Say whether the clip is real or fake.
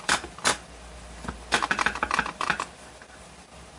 fake